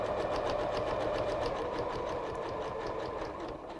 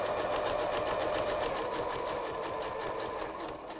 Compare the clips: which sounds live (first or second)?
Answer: second